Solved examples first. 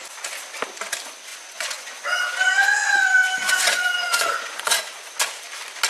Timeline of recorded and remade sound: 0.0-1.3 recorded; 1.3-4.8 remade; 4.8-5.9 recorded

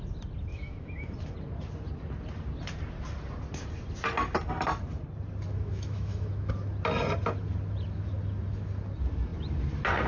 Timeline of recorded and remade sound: 0.0-0.5 recorded; 0.5-1.1 remade; 1.1-5.5 recorded; 5.5-6.5 remade; 6.5-10.1 recorded

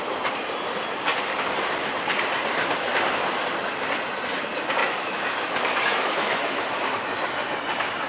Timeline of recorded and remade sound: 0.0-4.8 recorded; 4.8-6.9 remade; 6.9-8.1 recorded

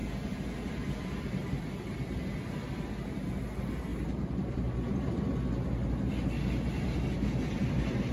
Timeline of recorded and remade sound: 0.0-1.5 remade; 1.5-3.9 recorded; 3.9-5.2 remade; 5.2-8.1 recorded

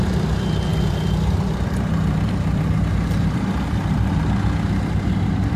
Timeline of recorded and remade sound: 0.0-0.7 recorded; 0.7-4.1 remade; 4.1-5.6 recorded

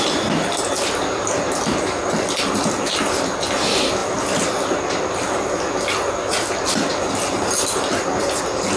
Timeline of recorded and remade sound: 0.0-8.8 recorded

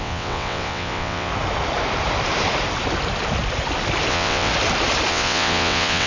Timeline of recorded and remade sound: 0.0-1.3 remade; 1.3-4.1 recorded; 4.1-4.5 remade; 4.5-5.1 recorded; 5.1-6.1 remade

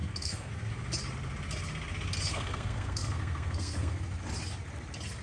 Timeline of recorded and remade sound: 0.0-0.5 remade; 0.5-2.3 recorded; 2.3-4.0 remade; 4.0-5.2 recorded